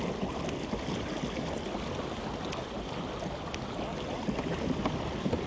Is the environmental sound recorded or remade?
recorded